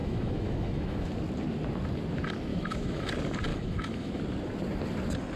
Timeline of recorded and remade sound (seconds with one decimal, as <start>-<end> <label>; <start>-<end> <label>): 0.0-1.1 remade; 1.1-2.5 recorded; 2.5-3.1 remade; 3.1-3.5 recorded; 3.5-4.2 remade; 4.2-5.4 recorded